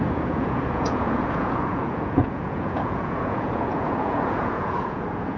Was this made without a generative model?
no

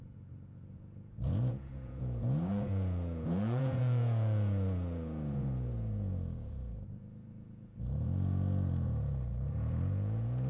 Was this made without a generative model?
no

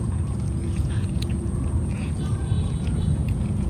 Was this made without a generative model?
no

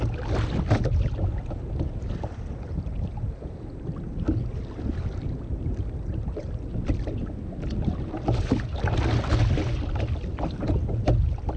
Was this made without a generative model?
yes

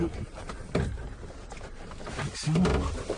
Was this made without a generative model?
yes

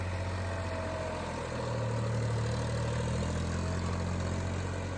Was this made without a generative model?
yes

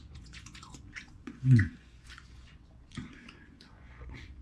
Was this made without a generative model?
no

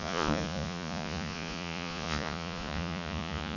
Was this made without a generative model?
no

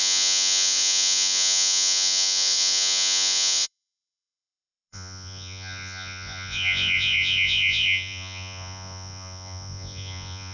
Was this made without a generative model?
no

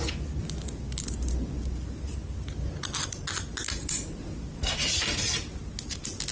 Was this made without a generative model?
yes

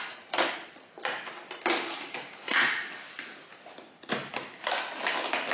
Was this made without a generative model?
yes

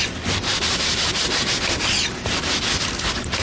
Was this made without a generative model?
yes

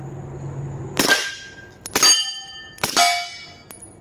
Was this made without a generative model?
yes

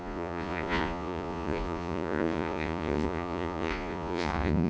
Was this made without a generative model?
no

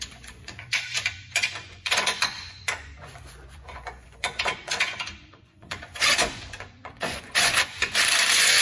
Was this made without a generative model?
no